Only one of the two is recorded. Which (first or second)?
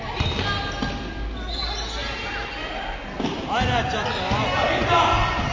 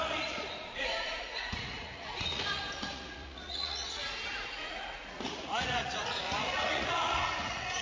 first